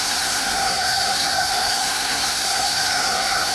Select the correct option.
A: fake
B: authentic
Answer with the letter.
A